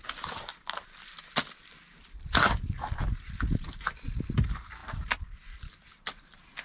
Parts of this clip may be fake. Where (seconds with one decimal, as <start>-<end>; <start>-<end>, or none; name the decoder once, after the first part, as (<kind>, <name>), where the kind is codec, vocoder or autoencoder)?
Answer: none